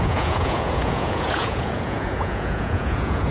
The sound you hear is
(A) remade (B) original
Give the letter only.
A